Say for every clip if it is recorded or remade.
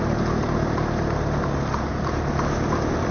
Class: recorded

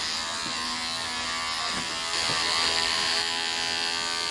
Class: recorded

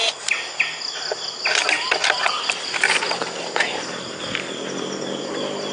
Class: recorded